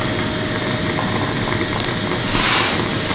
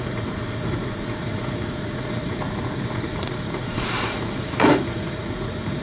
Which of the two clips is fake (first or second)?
second